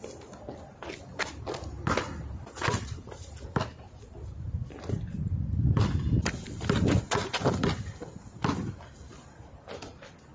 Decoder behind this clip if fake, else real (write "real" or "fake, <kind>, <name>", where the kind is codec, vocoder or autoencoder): real